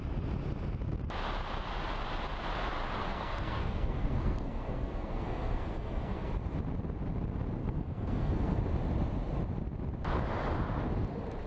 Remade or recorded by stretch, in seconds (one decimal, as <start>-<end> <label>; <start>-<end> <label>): 0.0-3.0 recorded; 3.0-6.3 remade; 6.3-7.6 recorded; 7.6-8.6 remade; 8.6-11.5 recorded